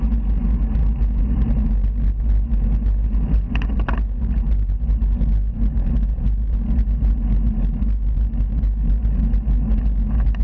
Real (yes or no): yes